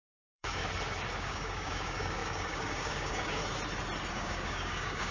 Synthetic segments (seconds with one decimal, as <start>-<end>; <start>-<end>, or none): 0.0-0.6; 1.2-3.4; 4.1-5.1